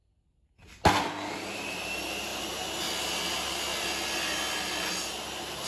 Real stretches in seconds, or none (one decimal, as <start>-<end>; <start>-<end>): 0.0-5.7